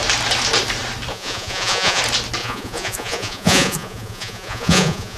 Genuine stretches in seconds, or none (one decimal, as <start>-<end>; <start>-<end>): 0.0-1.1; 2.0-2.4